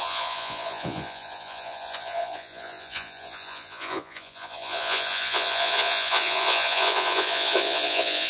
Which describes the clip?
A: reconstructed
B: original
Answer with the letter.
A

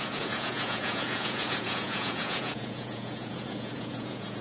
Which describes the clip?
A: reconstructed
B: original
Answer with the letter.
A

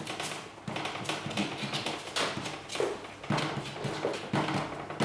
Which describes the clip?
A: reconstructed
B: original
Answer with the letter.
B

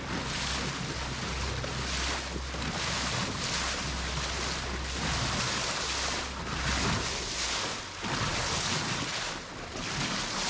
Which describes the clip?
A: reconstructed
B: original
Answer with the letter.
B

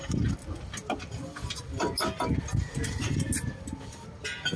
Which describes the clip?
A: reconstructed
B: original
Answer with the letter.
B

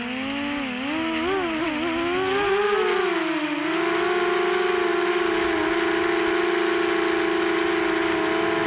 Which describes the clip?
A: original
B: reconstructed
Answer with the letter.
A